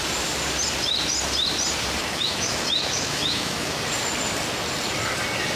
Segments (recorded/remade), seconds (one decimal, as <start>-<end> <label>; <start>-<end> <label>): 0.0-2.0 recorded; 2.0-3.8 remade; 3.8-5.6 recorded